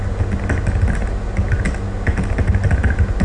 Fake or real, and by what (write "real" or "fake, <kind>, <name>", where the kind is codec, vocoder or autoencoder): real